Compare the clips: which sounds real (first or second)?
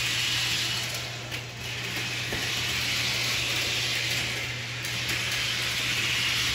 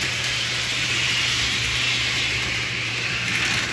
first